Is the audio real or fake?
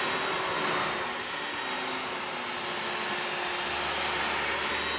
real